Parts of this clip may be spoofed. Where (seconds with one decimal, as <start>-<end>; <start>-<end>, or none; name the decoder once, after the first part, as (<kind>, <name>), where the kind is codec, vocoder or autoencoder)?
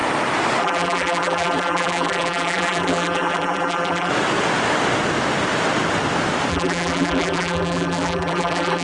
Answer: 0.6-4.1 (vocoder, BigVGAN v2); 6.5-8.8